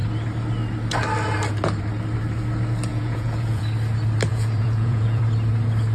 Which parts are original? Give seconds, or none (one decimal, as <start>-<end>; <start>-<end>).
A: 0.0-2.9; 3.6-4.3; 5.2-5.9